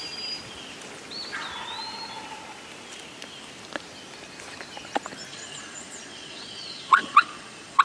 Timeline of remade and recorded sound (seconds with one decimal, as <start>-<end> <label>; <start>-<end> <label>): 0.0-5.3 recorded; 5.3-7.8 remade